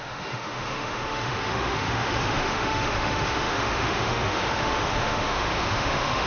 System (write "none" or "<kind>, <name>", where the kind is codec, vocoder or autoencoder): autoencoder, DAC-VAE